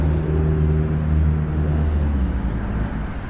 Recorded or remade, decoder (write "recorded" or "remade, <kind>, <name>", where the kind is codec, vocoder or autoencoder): recorded